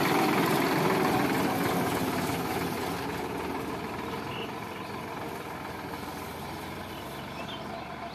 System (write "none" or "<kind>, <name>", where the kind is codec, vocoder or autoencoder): vocoder, BigVGAN v2